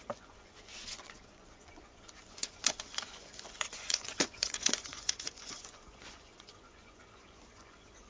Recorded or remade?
remade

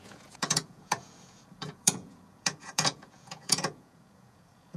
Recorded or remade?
remade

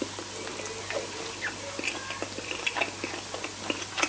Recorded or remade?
recorded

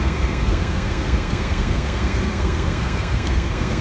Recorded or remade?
remade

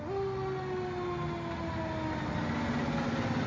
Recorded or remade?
recorded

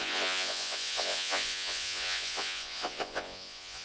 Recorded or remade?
remade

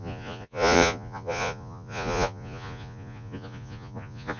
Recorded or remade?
remade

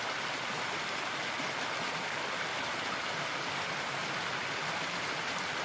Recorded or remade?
remade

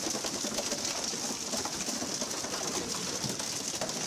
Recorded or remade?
recorded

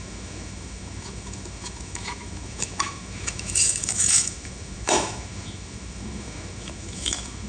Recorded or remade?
remade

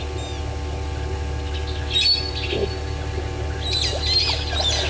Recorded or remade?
recorded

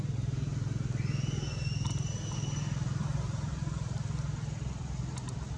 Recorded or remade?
recorded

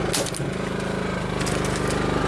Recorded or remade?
recorded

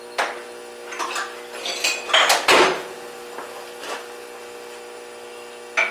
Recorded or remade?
recorded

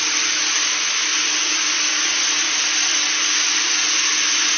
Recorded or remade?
recorded